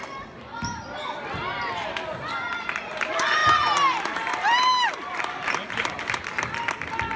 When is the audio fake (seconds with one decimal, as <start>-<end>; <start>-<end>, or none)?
none